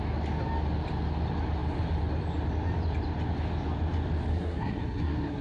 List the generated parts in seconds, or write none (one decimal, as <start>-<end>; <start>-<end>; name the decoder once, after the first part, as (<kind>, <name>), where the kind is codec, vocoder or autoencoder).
4.3-5.4 (codec, SNAC)